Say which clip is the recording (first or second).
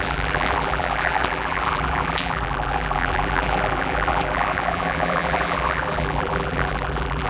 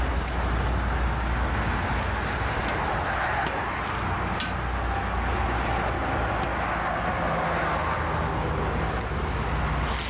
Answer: second